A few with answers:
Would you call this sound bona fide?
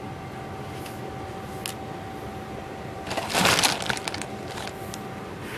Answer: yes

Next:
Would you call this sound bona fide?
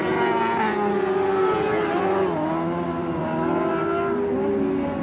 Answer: yes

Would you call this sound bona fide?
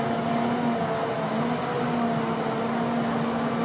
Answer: yes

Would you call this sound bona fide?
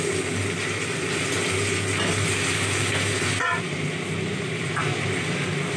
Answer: yes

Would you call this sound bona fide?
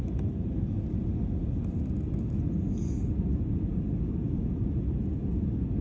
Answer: yes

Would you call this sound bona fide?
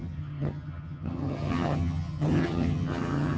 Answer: no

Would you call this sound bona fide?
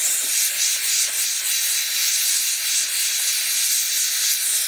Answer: yes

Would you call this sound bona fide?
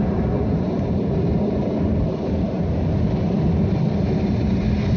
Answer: yes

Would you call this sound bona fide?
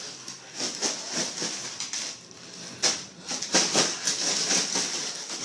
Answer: yes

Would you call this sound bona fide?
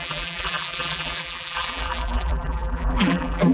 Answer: no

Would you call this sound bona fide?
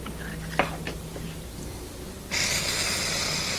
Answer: yes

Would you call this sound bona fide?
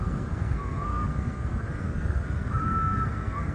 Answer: no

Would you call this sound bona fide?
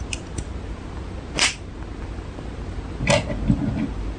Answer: yes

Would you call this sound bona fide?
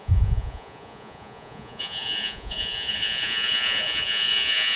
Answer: no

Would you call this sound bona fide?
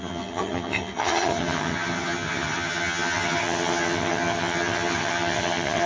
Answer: no